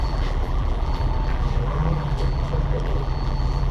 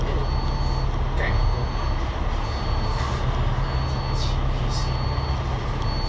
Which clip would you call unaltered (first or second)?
second